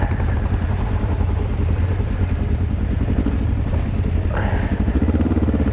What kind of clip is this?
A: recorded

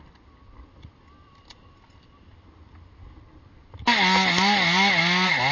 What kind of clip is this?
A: recorded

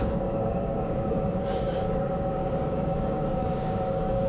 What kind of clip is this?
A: remade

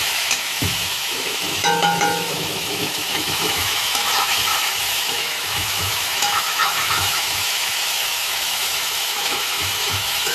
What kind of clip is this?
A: remade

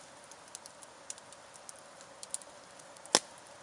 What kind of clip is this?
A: recorded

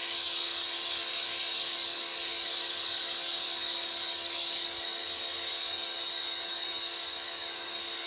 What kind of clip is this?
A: remade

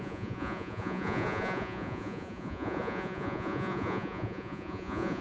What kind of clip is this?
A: remade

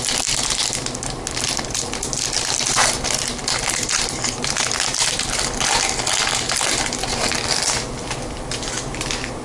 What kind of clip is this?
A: recorded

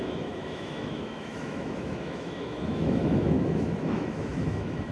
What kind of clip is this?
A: remade